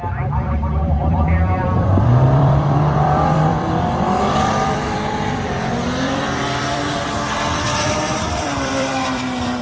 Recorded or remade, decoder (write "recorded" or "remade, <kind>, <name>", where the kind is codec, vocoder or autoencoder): remade, vocoder, BigVGAN v2